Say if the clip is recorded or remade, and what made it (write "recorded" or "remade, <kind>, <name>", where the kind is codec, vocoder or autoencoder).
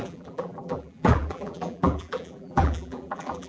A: remade, vocoder, BigVGAN v2